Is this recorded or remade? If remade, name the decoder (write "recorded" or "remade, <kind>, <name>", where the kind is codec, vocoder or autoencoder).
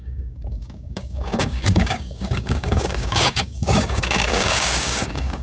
remade, codec, DAC